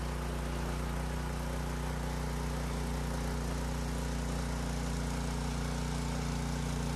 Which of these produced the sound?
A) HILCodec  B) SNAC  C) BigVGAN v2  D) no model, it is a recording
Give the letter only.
D